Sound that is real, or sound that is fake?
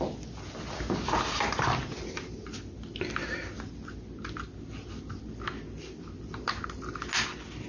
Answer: real